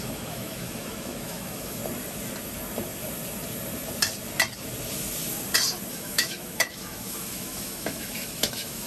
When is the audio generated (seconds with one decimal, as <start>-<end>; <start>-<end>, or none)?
0.0-1.8; 5.9-8.9